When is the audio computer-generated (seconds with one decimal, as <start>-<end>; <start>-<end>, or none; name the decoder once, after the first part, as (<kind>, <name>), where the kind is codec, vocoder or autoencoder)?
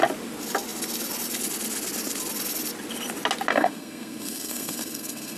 3.5-5.4 (codec, SNAC)